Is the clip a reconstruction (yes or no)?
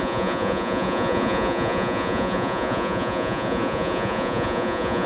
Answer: yes